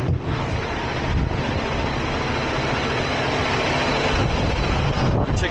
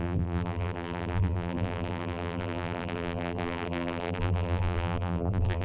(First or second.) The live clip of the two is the first